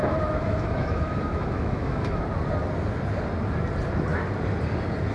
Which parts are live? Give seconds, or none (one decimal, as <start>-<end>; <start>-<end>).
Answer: 2.2-5.1

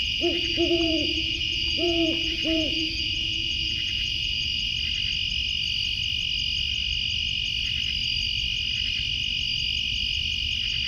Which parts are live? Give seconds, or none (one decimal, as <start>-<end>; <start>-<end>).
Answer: 4.7-10.9

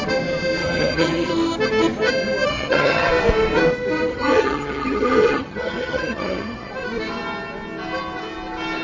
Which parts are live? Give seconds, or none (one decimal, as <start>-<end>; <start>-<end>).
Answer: 0.0-0.6; 1.3-2.5; 3.1-4.1; 6.7-8.8

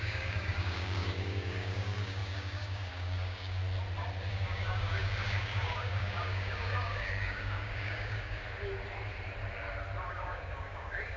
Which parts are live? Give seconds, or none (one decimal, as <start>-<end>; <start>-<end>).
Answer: 3.6-4.3; 8.4-10.1

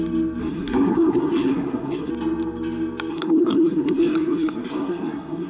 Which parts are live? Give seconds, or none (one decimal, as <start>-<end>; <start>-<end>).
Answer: 0.0-0.4; 2.1-3.1

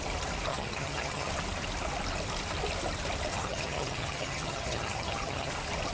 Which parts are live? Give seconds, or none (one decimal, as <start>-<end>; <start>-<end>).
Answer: 0.0-0.5; 1.3-3.3; 5.5-5.9

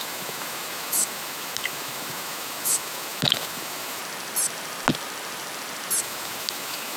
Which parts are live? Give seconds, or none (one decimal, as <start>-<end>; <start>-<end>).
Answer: 4.0-6.0

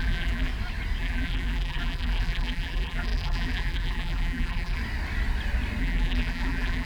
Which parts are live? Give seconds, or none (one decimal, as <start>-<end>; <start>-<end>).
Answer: 0.5-1.0; 4.8-5.8